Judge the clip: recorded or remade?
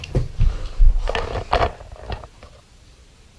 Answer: recorded